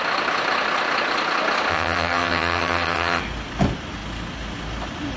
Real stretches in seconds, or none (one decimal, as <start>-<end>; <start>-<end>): 0.0-1.7; 3.2-5.2